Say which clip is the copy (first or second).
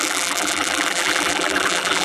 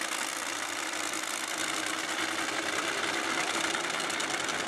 first